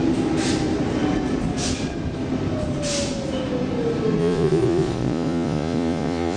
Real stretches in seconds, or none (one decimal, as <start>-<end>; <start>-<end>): 0.0-4.2